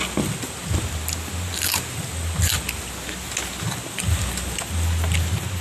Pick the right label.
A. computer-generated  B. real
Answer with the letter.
B